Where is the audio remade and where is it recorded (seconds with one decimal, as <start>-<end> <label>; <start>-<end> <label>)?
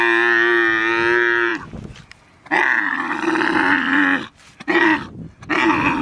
0.0-6.0 recorded